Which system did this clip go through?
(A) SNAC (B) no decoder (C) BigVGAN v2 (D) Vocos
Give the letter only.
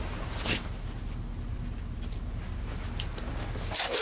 B